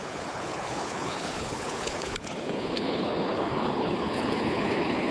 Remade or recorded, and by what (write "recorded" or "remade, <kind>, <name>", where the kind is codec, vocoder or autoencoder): remade, codec, HILCodec